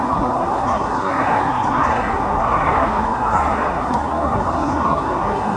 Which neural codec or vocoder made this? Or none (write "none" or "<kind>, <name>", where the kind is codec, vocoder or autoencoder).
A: codec, SNAC